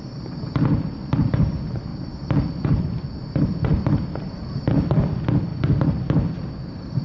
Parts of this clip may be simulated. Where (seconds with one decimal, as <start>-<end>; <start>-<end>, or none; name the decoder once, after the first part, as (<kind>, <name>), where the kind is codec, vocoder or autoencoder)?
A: 1.9-4.9 (vocoder, BigVGAN v2); 5.5-7.0